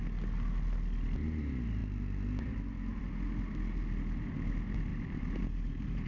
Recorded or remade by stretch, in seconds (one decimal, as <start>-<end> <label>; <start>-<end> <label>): 0.0-4.9 recorded; 4.9-6.1 remade